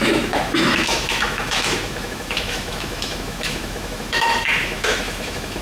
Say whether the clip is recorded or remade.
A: remade